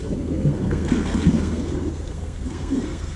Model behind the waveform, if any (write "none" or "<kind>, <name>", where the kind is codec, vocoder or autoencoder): codec, SNAC